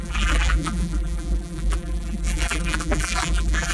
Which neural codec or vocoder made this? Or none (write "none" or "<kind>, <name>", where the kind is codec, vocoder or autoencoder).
vocoder, BigVGAN v2